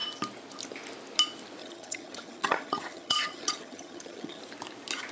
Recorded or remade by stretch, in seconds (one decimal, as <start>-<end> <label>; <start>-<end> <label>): 0.0-1.6 recorded; 1.6-4.4 remade; 4.4-5.1 recorded